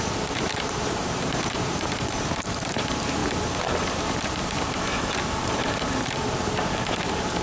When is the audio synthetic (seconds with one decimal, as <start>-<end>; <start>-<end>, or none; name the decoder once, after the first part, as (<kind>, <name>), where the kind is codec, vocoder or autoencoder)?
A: 0.0-3.2 (vocoder, BigVGAN v2); 4.0-7.4